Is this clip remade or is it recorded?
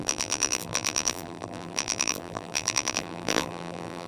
remade